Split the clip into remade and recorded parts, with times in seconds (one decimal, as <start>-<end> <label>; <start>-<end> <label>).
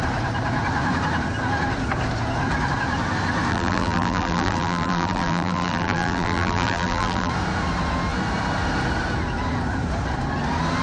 0.0-3.5 recorded; 3.5-7.3 remade; 7.3-10.8 recorded